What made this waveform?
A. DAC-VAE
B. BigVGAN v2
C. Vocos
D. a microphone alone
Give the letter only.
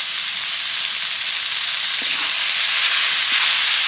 D